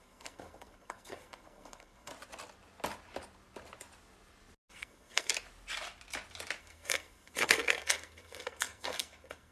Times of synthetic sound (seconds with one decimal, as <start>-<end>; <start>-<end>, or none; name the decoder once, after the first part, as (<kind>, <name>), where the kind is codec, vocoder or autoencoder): 0.0-2.1 (codec, SNAC); 4.7-5.3; 6.6-9.5

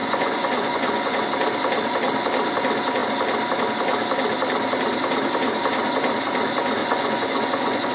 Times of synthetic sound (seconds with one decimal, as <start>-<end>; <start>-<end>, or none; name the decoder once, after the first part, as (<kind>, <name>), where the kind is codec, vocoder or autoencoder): 0.0-1.2 (vocoder, Vocos); 6.8-7.9

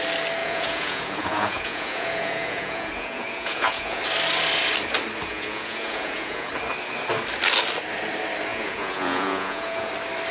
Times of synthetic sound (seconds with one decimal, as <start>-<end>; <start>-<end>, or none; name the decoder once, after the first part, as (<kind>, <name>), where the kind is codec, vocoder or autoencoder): 0.4-4.0 (vocoder, Vocos); 5.3-6.5; 8.5-9.9

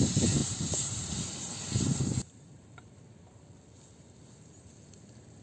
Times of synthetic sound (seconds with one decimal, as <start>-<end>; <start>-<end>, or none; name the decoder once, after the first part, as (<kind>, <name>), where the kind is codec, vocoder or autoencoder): 0.4-1.2 (vocoder, BigVGAN v2); 1.9-3.0

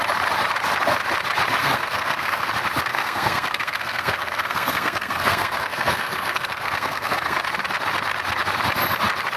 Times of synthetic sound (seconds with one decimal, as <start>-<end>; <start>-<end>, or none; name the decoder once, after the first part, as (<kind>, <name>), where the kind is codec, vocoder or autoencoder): 1.6-2.5 (codec, SNAC); 2.9-7.4

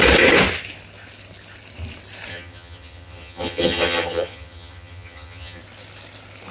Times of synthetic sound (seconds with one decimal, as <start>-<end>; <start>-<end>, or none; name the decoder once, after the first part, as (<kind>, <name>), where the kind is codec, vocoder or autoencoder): 2.3-5.6 (vocoder, HiFi-GAN)

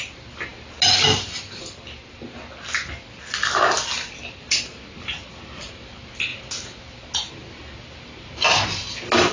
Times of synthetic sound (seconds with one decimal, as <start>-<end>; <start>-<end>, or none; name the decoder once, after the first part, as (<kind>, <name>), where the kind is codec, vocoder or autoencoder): none

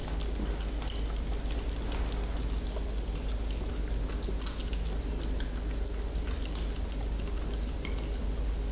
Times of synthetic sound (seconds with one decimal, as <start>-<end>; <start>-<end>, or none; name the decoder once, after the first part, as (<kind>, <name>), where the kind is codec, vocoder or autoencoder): none